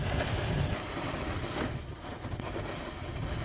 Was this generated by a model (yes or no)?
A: no